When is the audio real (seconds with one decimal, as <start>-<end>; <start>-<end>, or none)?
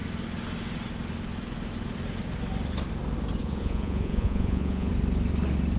0.0-3.4; 4.9-5.8